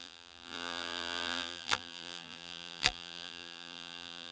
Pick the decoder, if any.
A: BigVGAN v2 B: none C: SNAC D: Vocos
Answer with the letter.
A